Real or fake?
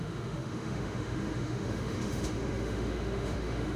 fake